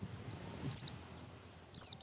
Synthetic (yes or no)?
no